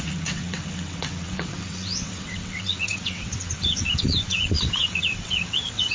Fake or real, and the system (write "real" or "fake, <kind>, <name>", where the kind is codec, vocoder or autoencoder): fake, vocoder, WaveNeXt